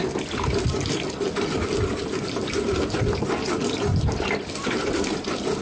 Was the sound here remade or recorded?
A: recorded